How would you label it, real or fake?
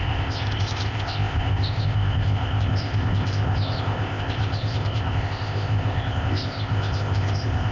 fake